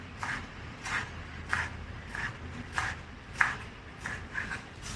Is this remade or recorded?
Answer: recorded